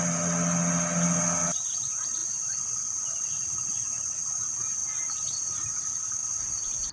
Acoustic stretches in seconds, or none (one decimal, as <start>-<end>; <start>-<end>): 0.0-6.9

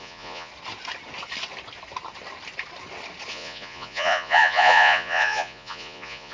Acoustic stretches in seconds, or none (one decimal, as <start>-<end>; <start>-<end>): 0.5-3.3

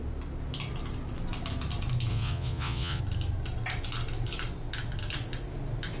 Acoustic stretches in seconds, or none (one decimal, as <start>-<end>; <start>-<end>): 0.0-2.1; 3.0-6.0

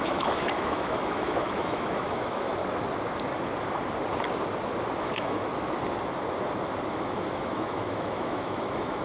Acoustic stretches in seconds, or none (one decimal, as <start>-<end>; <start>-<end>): 2.6-5.0; 5.5-6.9

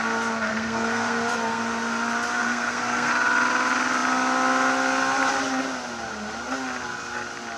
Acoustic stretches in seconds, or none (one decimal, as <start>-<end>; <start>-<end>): 0.0-0.5; 1.6-2.4; 3.1-7.6